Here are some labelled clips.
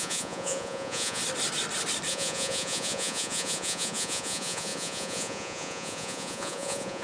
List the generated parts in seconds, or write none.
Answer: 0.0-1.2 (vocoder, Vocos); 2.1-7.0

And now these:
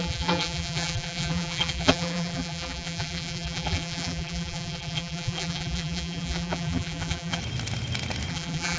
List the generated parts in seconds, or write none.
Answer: 0.0-7.4 (vocoder, BigVGAN v2); 8.3-8.8

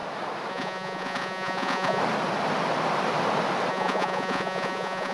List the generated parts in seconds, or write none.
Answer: 0.5-2.0 (vocoder, Vocos); 3.7-5.1

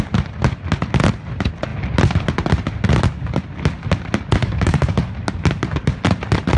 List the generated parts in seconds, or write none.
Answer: 4.4-5.1 (codec, DAC)

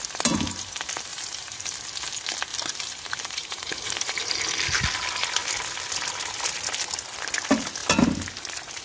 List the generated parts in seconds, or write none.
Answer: 1.1-1.7 (vocoder, BigVGAN v2); 2.5-4.3

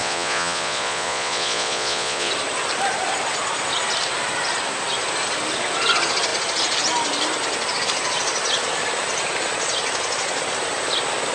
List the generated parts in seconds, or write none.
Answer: 0.0-2.3 (vocoder, Vocos)

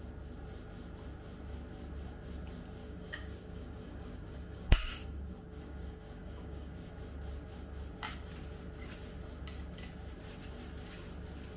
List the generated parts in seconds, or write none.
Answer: 2.8-6.9 (codec, DAC)

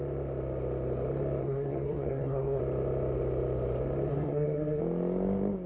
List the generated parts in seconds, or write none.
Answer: 1.4-2.6 (codec, SNAC); 4.1-4.8